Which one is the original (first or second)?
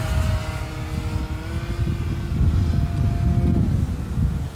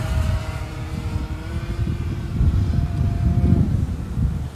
first